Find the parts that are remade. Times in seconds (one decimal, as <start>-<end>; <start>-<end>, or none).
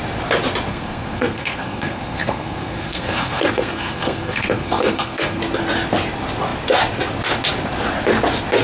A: 0.7-5.4